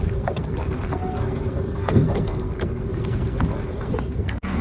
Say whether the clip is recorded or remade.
remade